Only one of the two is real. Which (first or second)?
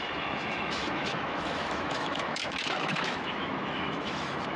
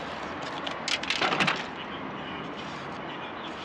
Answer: second